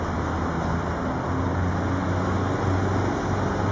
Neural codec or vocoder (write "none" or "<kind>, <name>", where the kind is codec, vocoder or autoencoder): none